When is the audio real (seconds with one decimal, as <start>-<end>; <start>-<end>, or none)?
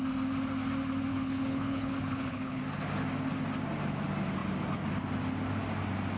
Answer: 0.0-1.1; 2.6-6.2